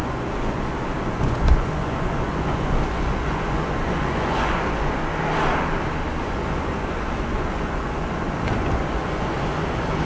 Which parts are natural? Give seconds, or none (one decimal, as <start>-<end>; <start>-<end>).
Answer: 0.6-1.1; 5.0-6.2